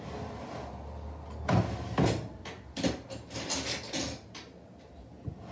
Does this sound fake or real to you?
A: real